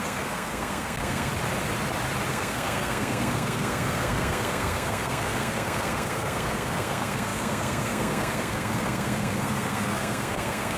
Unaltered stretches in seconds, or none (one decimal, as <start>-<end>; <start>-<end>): 1.3-2.3